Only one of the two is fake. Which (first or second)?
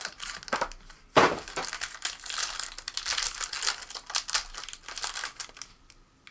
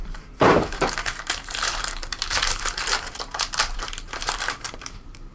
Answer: second